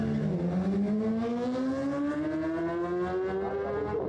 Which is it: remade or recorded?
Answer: recorded